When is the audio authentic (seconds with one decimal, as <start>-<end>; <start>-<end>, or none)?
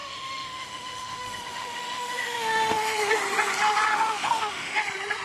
3.1-3.9; 4.8-5.2